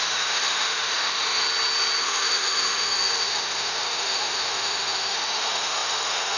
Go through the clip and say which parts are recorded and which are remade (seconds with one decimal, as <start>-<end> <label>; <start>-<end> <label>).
0.0-1.4 remade; 1.4-2.0 recorded; 2.0-6.4 remade